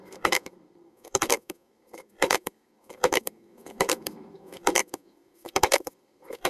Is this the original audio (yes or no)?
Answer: no